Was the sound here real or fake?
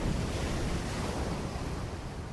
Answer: real